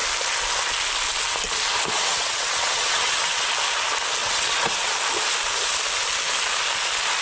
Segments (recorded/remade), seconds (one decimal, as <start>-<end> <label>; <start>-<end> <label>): 0.0-2.0 recorded; 2.0-3.5 remade; 3.5-4.2 recorded; 4.2-4.9 remade; 4.9-7.2 recorded